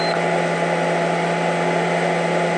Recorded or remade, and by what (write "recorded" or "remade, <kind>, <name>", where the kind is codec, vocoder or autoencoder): recorded